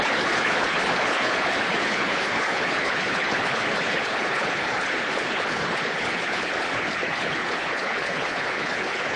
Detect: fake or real fake